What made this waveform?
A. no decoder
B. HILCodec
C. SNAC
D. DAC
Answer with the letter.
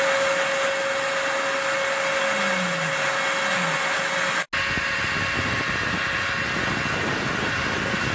A